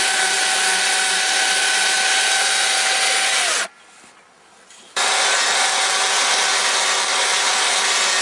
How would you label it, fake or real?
real